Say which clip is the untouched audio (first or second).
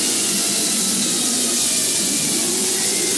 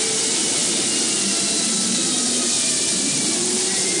second